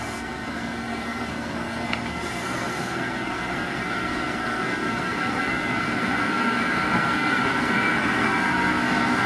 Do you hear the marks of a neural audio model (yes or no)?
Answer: yes